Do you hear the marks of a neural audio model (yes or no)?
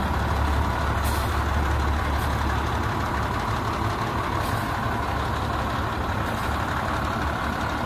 no